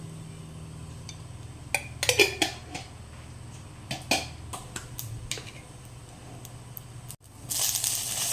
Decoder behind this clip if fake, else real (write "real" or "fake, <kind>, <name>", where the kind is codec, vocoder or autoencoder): real